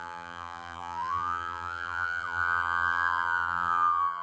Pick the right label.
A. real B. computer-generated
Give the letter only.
B